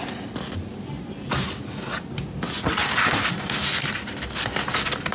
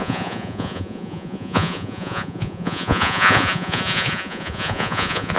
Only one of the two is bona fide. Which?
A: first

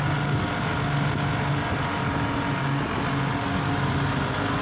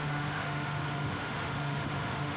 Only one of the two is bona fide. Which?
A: first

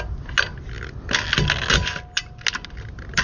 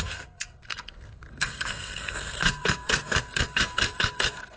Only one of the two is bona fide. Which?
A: first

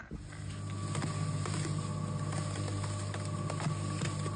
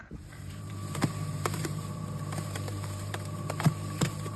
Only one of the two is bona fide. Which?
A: first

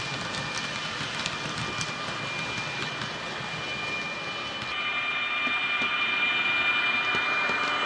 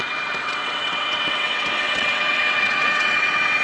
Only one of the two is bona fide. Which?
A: first